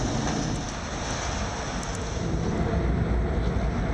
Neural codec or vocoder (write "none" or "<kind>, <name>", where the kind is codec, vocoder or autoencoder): none